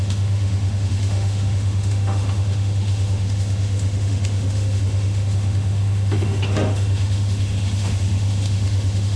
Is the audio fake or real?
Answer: fake